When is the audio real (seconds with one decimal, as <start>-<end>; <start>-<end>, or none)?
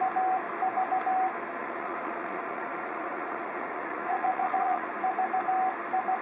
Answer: 0.0-1.6; 4.9-6.2